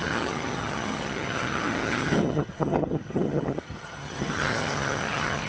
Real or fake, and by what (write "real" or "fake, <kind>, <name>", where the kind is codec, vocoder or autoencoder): fake, vocoder, HiFi-GAN